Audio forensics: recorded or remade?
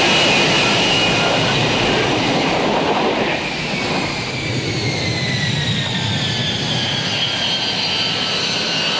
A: recorded